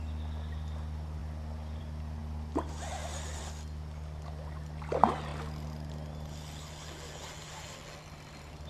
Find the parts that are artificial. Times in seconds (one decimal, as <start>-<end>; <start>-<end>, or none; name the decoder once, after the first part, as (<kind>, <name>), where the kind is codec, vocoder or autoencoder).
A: none